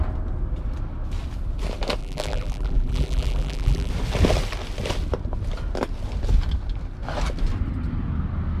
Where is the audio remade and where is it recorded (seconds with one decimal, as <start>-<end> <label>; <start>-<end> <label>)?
0.0-2.0 recorded; 2.0-3.9 remade; 3.9-8.6 recorded